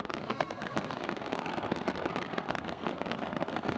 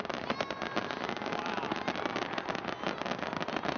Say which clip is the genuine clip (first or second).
second